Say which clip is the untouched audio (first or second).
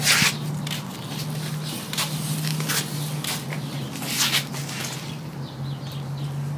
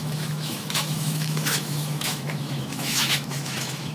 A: first